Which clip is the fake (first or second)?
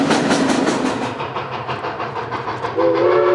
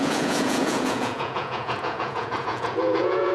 second